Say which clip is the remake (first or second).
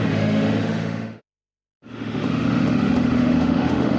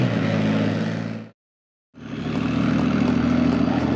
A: first